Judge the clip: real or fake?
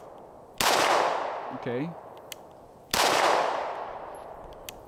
real